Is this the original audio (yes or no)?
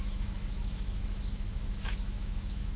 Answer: no